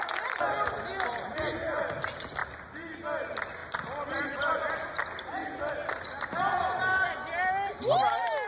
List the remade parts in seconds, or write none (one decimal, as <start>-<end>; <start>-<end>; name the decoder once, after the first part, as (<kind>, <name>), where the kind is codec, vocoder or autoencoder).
none